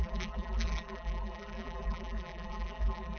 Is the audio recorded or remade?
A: remade